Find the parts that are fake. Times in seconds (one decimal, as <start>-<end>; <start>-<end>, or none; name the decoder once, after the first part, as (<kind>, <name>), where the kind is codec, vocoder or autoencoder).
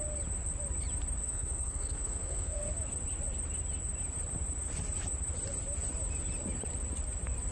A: 1.2-2.7 (codec, SNAC)